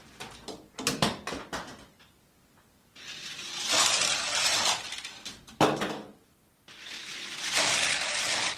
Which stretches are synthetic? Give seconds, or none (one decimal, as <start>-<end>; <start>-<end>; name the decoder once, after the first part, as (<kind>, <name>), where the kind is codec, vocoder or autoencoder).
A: none